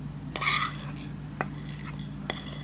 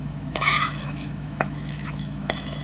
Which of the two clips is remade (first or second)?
second